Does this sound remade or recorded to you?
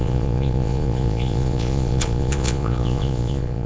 remade